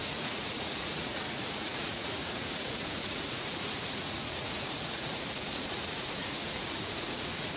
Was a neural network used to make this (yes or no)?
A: yes